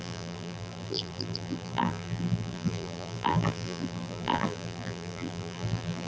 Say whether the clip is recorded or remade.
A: remade